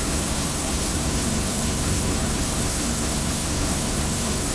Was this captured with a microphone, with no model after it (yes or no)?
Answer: no